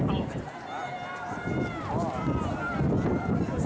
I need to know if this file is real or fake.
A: real